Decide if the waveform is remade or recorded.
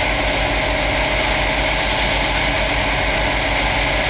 recorded